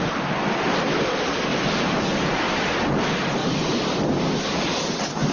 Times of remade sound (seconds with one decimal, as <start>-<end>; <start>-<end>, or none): 1.5-2.3; 3.4-4.2